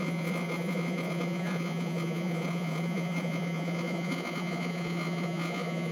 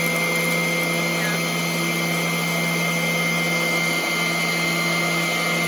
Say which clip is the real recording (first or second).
second